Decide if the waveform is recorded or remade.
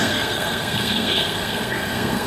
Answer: remade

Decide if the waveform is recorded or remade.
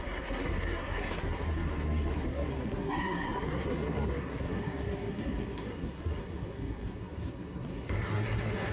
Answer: remade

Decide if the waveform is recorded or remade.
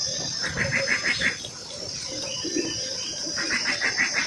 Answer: recorded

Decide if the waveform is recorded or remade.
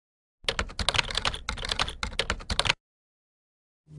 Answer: recorded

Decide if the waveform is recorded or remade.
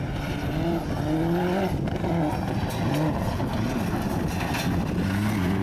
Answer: recorded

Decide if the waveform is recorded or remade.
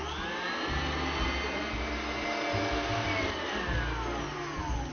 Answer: recorded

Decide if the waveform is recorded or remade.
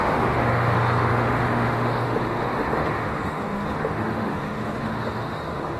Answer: remade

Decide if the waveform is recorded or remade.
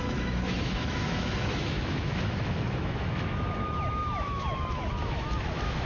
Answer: remade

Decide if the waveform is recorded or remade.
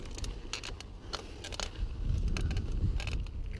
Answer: recorded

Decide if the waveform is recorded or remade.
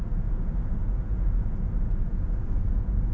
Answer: remade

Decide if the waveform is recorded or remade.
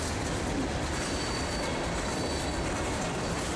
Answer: recorded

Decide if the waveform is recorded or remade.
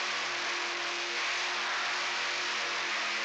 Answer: recorded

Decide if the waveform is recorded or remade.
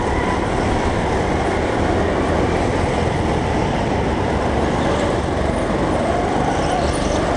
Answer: recorded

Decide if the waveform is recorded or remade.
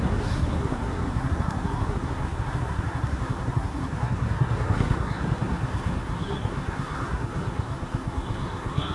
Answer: remade